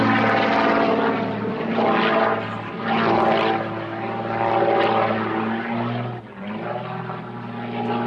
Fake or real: real